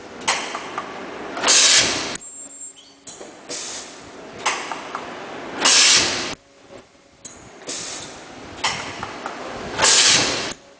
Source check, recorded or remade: recorded